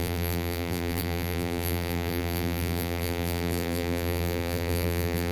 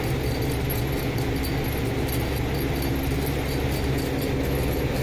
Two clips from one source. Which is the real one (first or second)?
second